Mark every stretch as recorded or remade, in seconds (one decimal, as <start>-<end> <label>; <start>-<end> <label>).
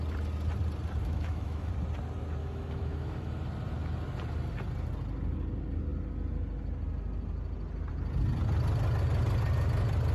0.0-1.0 recorded; 1.0-1.7 remade; 1.7-2.4 recorded; 2.4-3.4 remade; 3.4-10.1 recorded